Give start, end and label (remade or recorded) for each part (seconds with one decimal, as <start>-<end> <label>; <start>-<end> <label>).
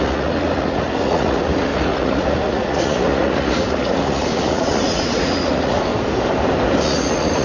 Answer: 0.0-5.9 remade; 5.9-6.8 recorded; 6.8-7.4 remade